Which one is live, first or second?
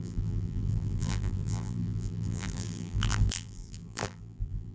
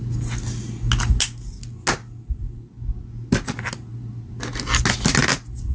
second